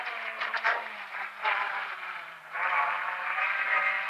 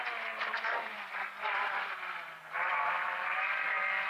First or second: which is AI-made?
first